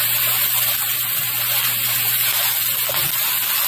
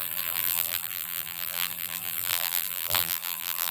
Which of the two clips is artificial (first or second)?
second